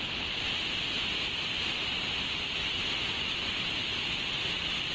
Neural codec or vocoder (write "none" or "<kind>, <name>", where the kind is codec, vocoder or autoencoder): none